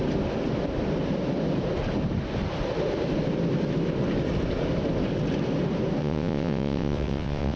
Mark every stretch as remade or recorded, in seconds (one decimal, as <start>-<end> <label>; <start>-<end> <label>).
0.0-6.0 recorded; 6.0-7.6 remade

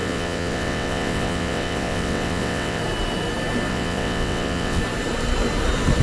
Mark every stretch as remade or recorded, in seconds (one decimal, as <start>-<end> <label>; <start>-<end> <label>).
0.0-2.8 remade; 2.8-3.7 recorded; 3.7-4.8 remade; 4.8-6.0 recorded

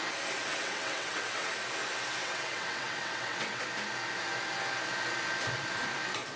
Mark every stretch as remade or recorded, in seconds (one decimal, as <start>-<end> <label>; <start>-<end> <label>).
0.0-0.4 recorded; 0.4-1.5 remade; 1.5-2.2 recorded; 2.2-3.6 remade; 3.6-6.4 recorded